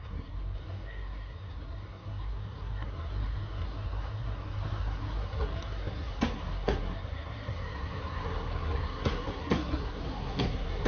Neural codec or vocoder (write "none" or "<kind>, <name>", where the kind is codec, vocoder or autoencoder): codec, SNAC